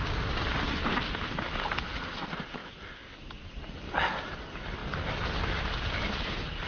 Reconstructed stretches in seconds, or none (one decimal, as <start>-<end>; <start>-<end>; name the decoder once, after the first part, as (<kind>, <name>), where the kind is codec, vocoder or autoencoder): none